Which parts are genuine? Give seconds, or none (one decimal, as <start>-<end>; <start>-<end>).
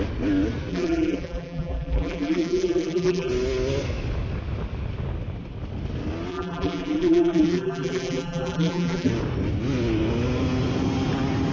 0.0-0.7; 3.3-6.3; 9.1-11.5